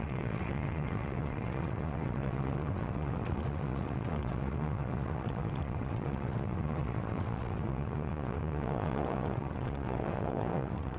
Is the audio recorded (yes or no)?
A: no